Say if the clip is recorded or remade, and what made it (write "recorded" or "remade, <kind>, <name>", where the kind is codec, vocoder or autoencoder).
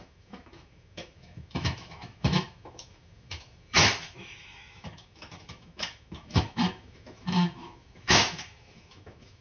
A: remade, autoencoder, DAC-VAE